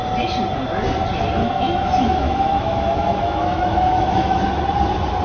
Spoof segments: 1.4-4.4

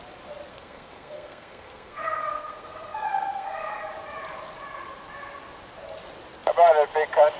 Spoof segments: 0.5-3.9

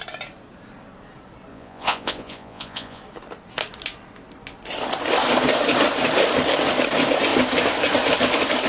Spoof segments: 1.5-3.0

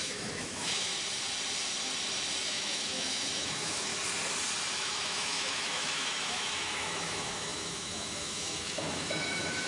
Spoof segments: 0.0-0.9; 2.4-3.9; 4.7-9.7

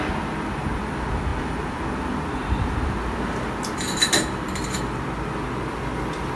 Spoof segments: none